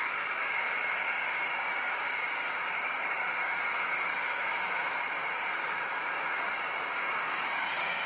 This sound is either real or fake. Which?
fake